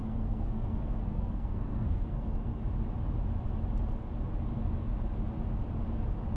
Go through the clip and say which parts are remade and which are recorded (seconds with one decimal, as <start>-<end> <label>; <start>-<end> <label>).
0.0-2.6 remade; 2.6-6.4 recorded